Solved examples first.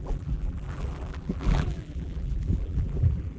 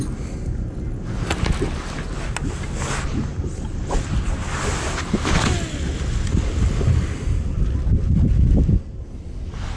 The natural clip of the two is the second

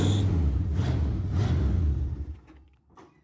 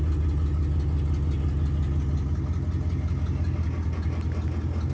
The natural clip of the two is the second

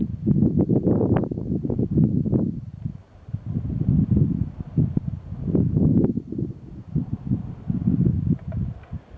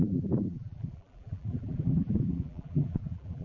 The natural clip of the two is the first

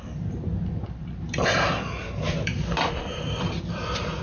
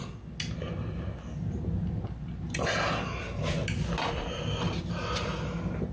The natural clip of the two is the second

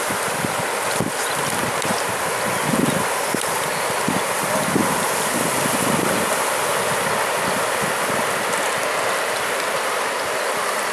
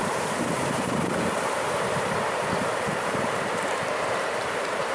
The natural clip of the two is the first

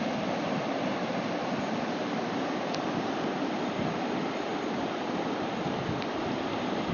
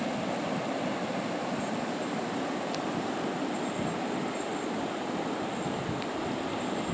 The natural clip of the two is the second